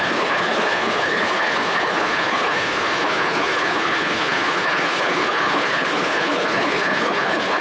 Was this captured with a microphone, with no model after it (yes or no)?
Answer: no